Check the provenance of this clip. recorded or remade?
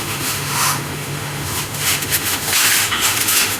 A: remade